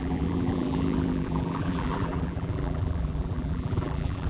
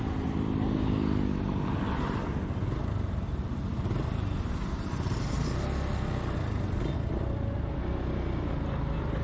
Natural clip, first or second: second